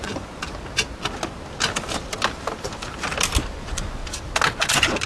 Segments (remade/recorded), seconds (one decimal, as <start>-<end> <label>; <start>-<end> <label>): 0.0-0.4 remade; 0.4-3.5 recorded; 3.5-4.0 remade; 4.0-5.1 recorded